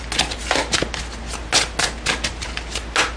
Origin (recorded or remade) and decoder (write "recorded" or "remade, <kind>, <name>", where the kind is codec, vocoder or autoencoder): recorded